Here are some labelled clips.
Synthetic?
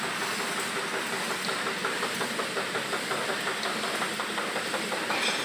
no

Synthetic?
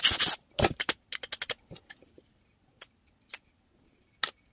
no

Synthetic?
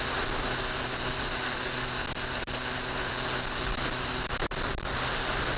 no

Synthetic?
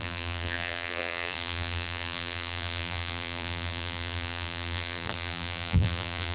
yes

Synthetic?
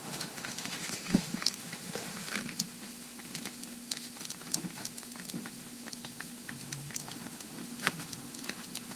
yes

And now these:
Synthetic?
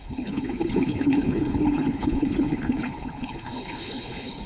yes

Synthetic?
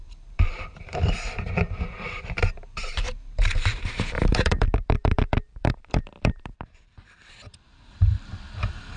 yes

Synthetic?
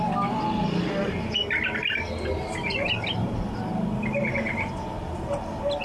no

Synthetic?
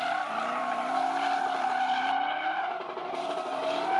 yes